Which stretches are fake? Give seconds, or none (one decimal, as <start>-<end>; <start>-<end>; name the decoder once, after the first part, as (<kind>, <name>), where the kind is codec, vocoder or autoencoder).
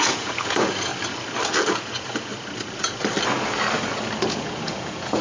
0.0-0.9 (vocoder, Vocos); 1.7-2.3; 4.3-5.2